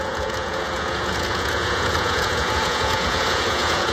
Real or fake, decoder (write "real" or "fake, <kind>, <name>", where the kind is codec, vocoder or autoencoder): fake, vocoder, Vocos